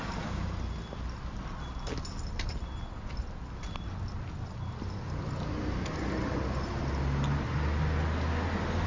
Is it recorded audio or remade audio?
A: recorded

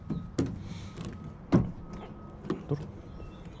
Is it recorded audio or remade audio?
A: recorded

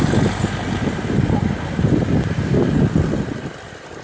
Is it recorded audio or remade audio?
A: recorded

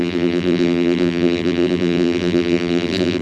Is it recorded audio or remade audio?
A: remade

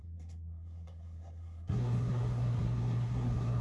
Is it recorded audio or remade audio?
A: remade